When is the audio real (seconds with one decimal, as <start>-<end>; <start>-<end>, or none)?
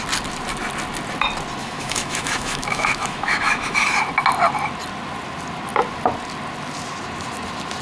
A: 0.0-1.6; 4.0-7.8